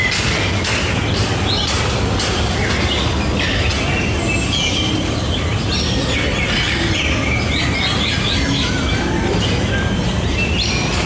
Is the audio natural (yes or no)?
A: yes